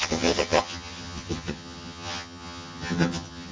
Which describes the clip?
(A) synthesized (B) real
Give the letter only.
A